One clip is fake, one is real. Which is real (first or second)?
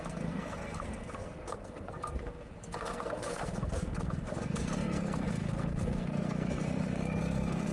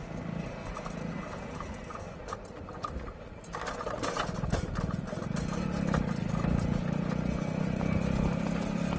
second